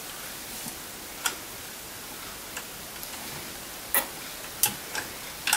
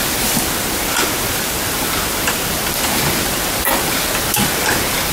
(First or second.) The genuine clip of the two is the first